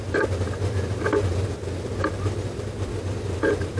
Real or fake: real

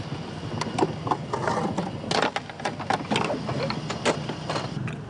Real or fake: real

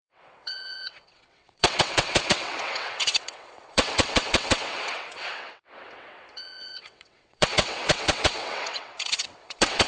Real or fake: fake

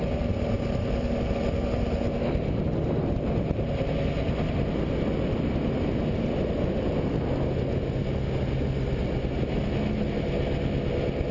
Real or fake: real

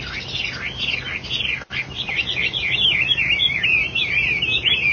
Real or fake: fake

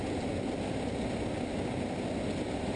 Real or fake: real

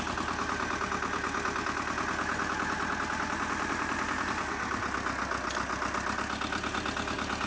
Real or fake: real